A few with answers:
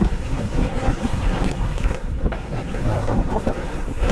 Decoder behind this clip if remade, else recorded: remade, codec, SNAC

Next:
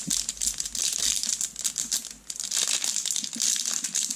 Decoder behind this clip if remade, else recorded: recorded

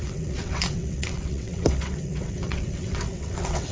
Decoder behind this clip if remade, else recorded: remade, vocoder, WaveNeXt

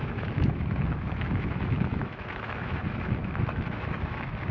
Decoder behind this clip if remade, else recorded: remade, autoencoder, DAC-VAE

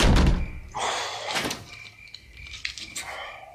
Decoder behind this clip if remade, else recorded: recorded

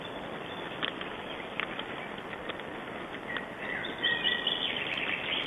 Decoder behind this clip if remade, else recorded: remade, vocoder, BigVGAN v2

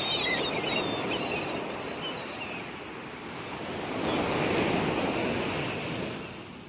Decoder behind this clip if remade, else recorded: recorded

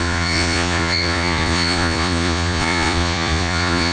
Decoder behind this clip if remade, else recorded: remade, vocoder, Vocos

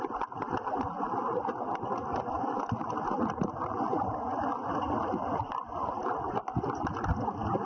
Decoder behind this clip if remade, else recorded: recorded